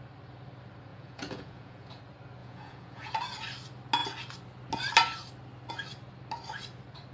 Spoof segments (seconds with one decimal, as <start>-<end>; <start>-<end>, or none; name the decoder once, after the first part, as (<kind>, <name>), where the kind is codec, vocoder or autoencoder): 0.9-2.0 (vocoder, Vocos); 2.4-3.1